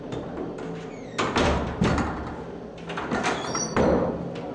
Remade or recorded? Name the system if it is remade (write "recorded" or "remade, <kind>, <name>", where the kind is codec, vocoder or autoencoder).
recorded